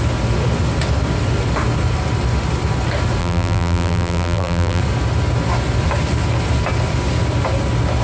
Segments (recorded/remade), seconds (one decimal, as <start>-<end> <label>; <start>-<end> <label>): 0.0-3.2 recorded; 3.2-4.8 remade; 4.8-8.0 recorded